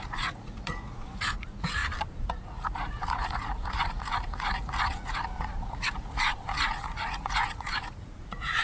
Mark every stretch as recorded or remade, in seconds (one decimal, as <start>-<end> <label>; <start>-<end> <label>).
0.0-1.8 remade; 1.8-2.3 recorded; 2.3-8.6 remade